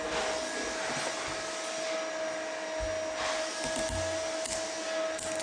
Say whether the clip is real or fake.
real